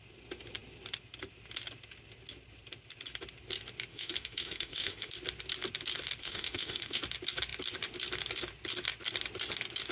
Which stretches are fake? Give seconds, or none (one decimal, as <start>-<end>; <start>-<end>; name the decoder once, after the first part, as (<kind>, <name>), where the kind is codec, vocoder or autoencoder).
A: 3.9-5.1 (autoencoder, DAC-VAE); 6.2-7.0